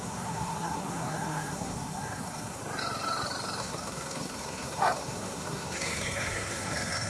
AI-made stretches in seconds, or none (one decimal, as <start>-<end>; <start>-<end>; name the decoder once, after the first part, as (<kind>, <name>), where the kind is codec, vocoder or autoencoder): 0.0-2.6 (codec, SNAC); 3.6-7.1